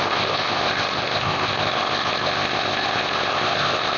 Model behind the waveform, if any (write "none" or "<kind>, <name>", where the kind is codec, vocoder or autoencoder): codec, ZipCodec